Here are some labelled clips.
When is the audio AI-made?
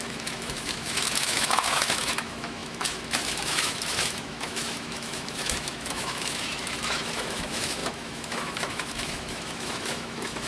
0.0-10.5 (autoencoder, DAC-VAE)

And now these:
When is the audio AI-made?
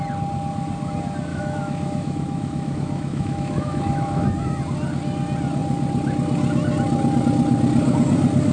1.3-4.6 (autoencoder, DAC-VAE)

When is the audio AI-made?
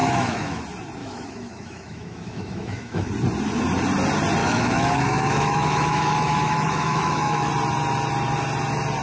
0.0-0.6 (autoencoder, DAC-VAE); 1.0-3.1; 4.4-7.5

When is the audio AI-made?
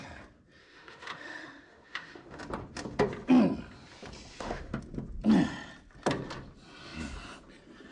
0.6-2.4 (autoencoder, DAC-VAE); 4.3-4.8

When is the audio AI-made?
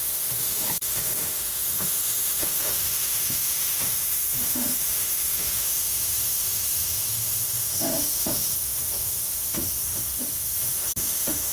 0.0-11.5 (autoencoder, DAC-VAE)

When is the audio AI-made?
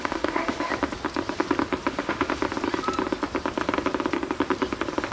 0.0-0.7 (autoencoder, DAC-VAE); 1.9-2.4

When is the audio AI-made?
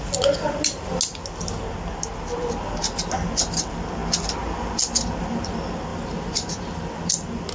none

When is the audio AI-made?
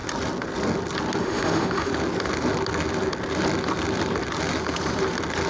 1.2-1.9 (autoencoder, DAC-VAE)